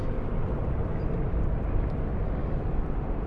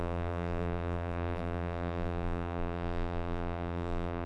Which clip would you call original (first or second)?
first